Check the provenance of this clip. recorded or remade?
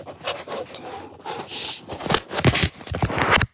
recorded